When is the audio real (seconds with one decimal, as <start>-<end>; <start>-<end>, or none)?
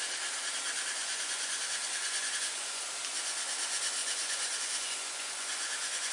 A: 0.0-1.0; 2.8-4.0